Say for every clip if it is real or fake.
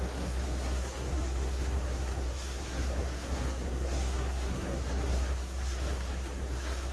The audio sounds fake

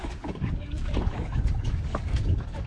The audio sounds fake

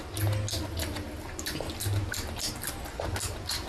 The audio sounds real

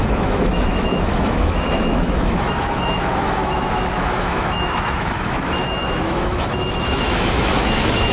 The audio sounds fake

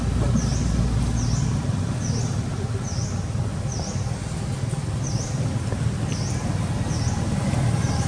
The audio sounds real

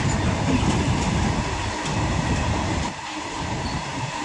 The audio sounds fake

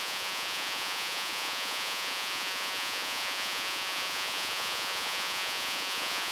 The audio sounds fake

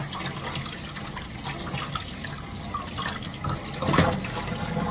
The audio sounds real